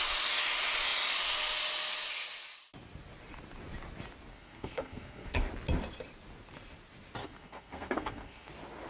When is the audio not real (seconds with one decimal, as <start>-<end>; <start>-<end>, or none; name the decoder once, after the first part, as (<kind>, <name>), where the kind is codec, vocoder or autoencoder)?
4.3-5.5 (codec, SNAC); 7.2-8.5